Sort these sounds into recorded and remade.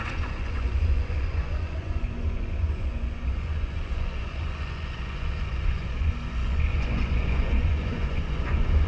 remade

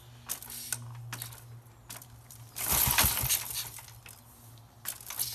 recorded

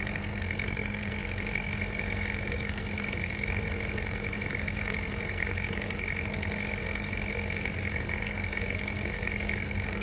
remade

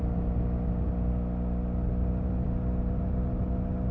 recorded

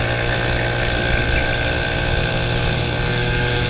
recorded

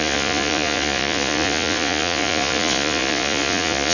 remade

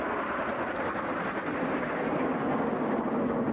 recorded